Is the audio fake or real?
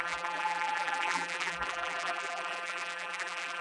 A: fake